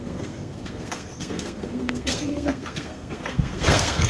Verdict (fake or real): fake